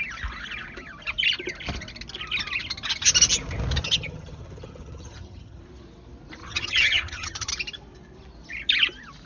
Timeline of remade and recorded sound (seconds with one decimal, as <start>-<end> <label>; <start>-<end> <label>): 0.0-3.8 recorded; 3.8-5.6 remade; 5.6-6.4 recorded; 6.4-7.5 remade; 7.5-9.3 recorded